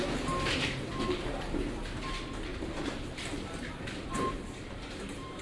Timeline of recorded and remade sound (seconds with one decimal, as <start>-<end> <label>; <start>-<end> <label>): 0.0-0.9 recorded; 0.9-1.6 remade; 1.6-2.5 recorded; 2.5-5.4 remade